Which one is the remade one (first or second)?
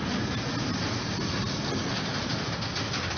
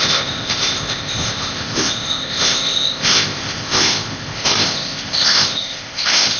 second